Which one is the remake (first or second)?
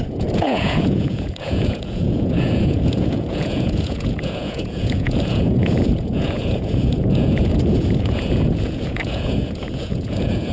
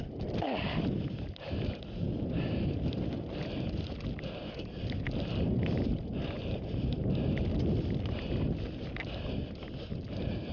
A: first